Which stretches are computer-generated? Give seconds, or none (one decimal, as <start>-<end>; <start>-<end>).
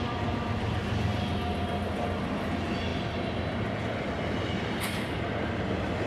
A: none